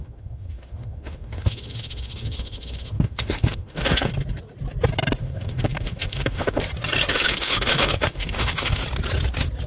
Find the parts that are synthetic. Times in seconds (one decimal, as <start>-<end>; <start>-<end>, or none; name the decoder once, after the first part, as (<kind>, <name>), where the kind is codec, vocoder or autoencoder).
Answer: 0.0-4.1 (autoencoder, DAC-VAE); 5.2-6.6; 7.1-8.8